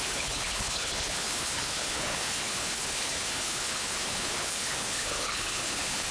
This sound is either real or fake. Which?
fake